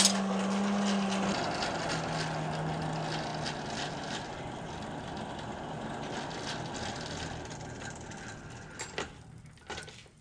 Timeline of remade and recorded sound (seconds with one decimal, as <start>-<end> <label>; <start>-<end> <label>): 0.0-10.2 recorded